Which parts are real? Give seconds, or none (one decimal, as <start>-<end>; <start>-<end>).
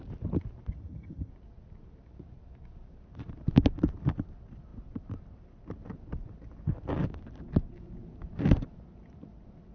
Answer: 0.0-0.7; 1.3-9.7